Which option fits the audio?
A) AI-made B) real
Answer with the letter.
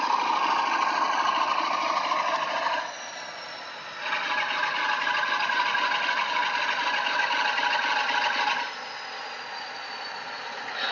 B